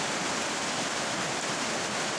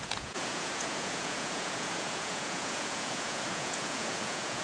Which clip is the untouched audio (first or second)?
first